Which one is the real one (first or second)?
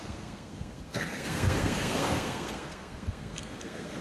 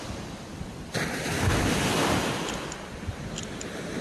second